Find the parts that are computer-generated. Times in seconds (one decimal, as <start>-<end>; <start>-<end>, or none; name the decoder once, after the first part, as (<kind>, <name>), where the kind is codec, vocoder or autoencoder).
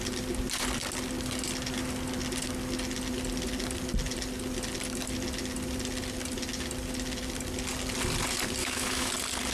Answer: 8.6-9.1 (autoencoder, DAC-VAE)